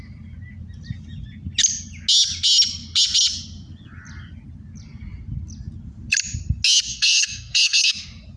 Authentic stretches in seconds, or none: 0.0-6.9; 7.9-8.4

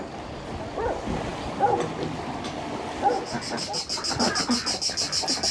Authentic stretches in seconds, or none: 0.0-5.5